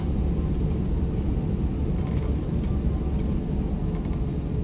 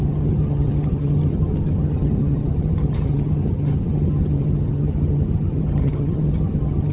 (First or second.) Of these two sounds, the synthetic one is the second